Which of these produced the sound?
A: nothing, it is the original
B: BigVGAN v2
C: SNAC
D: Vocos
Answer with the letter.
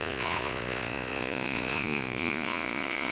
D